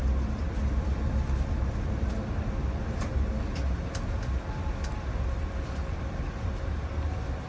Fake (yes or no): yes